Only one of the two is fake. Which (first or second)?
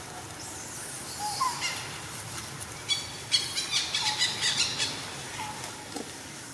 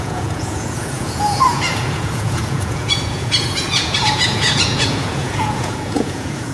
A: second